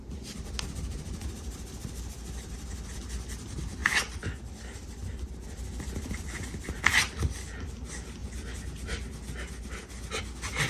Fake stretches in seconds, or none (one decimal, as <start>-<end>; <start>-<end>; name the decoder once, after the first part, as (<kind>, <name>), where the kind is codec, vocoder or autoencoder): none